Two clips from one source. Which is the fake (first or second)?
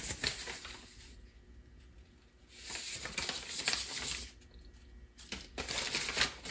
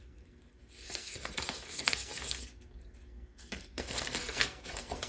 second